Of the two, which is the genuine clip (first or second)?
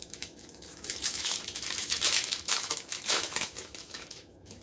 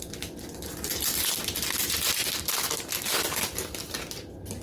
second